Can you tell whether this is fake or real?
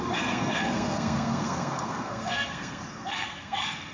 fake